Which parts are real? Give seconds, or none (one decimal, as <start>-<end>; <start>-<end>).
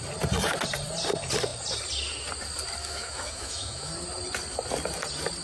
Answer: 0.0-2.8; 3.9-5.4